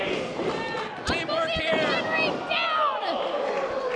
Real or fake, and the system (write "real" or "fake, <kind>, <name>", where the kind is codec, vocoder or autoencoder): real